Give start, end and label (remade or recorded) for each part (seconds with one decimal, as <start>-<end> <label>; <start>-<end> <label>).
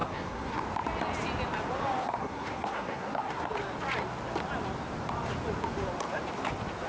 0.0-0.6 remade; 0.6-2.0 recorded; 2.0-3.5 remade; 3.5-6.9 recorded